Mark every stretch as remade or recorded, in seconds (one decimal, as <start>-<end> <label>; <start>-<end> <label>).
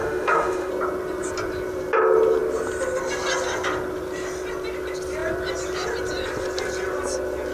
0.0-0.7 remade; 0.7-7.5 recorded